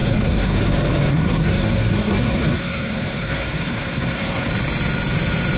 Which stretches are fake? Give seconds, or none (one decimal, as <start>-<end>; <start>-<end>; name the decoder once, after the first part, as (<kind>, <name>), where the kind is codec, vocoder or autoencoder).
0.0-0.6 (codec, SNAC); 1.1-4.5